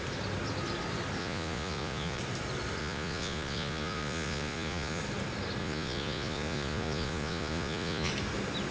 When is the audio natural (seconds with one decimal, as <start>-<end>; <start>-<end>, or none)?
0.0-1.2; 2.2-2.8; 5.0-5.6; 8.1-8.7